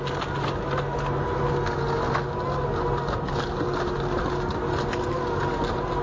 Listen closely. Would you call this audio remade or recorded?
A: recorded